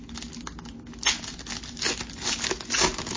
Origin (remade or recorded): recorded